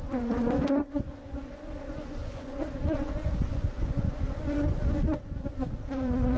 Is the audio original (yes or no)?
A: no